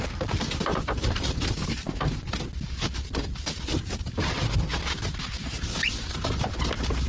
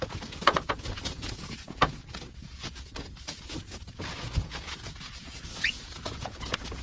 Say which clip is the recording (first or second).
first